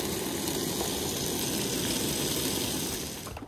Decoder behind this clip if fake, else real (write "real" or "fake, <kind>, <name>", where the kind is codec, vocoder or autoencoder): real